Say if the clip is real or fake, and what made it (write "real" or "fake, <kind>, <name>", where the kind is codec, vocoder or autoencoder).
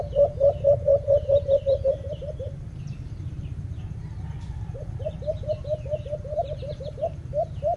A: fake, vocoder, BigVGAN v2